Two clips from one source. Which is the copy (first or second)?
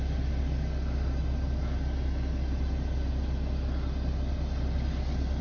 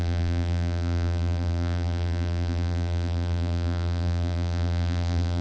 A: second